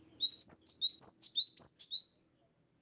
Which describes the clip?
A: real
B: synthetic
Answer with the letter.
A